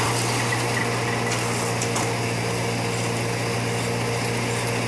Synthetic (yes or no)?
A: no